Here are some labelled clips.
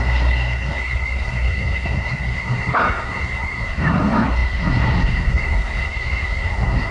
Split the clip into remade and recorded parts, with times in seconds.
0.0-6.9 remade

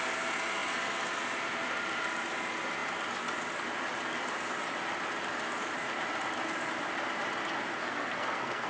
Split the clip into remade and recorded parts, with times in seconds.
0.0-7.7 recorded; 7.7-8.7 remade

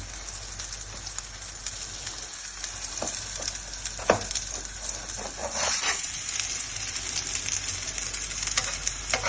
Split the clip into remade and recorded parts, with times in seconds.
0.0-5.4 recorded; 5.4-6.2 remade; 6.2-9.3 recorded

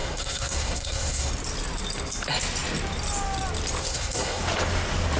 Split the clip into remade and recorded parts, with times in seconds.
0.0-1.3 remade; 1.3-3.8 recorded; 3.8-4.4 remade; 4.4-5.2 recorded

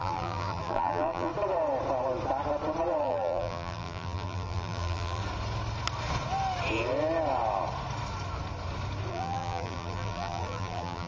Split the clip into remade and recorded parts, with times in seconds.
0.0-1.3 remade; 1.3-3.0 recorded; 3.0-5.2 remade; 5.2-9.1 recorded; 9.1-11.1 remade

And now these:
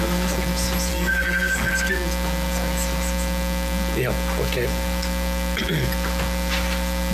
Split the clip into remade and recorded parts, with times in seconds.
0.0-0.9 recorded; 0.9-1.7 remade; 1.7-7.1 recorded

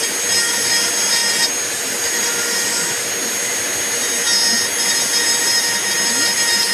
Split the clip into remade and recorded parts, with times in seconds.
0.0-6.7 recorded

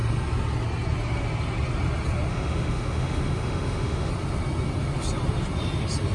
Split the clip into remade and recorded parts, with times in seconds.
0.0-2.3 recorded; 2.3-4.1 remade; 4.1-6.1 recorded